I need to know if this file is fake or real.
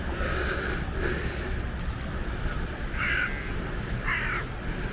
real